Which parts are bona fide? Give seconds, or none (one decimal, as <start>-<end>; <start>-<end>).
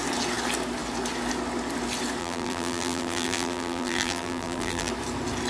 0.0-2.2; 4.9-5.5